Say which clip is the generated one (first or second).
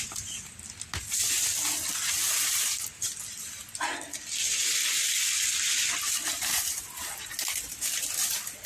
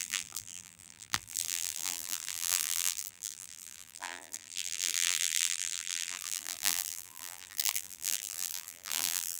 second